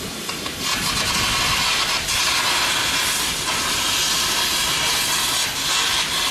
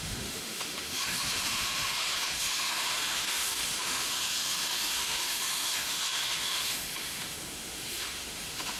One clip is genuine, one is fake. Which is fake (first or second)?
second